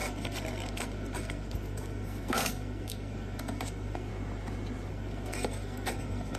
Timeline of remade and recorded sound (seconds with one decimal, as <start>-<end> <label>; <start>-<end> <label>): 0.0-4.1 remade; 4.1-4.9 recorded; 4.9-6.4 remade